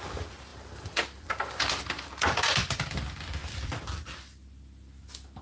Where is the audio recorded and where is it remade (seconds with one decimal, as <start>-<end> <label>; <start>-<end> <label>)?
0.0-0.5 recorded; 0.5-2.6 remade; 2.6-3.4 recorded; 3.4-4.0 remade; 4.0-5.4 recorded